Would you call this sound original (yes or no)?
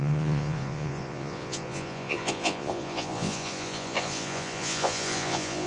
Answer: no